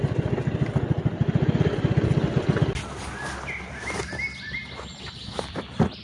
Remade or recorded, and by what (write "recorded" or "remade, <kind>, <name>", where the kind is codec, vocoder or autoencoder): recorded